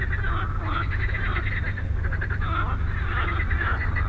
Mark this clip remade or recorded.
recorded